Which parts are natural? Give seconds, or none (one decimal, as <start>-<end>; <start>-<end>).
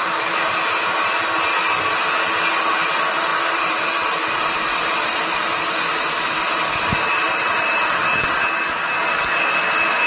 0.0-3.3; 8.3-10.1